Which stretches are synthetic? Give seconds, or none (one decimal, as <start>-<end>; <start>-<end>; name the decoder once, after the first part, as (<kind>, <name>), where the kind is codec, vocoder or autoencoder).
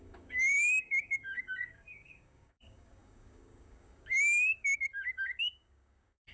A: 0.0-6.3 (codec, DAC)